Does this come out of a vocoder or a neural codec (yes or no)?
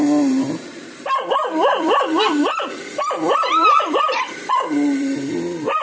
yes